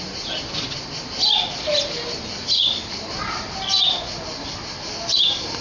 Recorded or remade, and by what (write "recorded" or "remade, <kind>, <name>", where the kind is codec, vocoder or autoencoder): recorded